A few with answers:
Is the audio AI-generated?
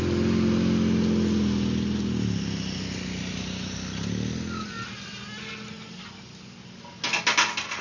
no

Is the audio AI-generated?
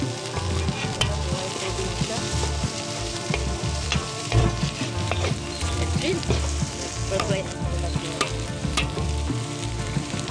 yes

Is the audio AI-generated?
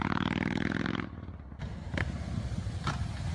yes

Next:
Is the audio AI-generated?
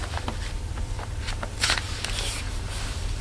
yes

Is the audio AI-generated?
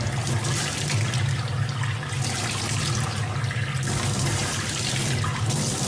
no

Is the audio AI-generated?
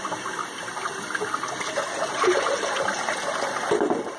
yes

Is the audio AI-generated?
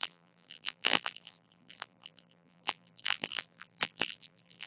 yes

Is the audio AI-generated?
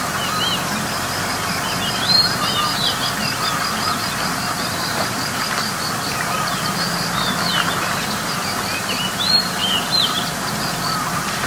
no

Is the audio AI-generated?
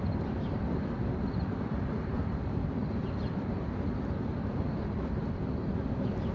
yes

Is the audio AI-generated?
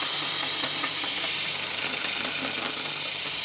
yes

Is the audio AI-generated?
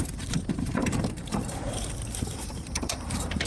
yes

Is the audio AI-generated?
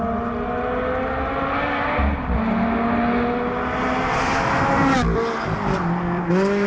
no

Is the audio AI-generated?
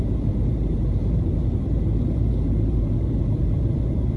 yes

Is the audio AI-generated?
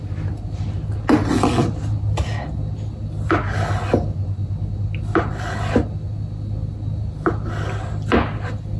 no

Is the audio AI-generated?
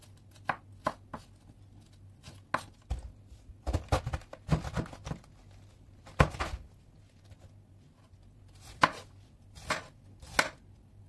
no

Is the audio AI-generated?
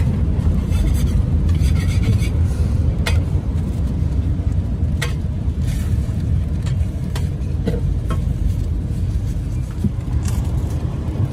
yes